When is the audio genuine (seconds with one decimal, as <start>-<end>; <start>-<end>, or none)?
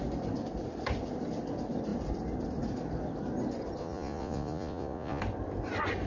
0.0-3.8; 5.2-6.1